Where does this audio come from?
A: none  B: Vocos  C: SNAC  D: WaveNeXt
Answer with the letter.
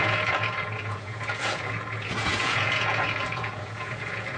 B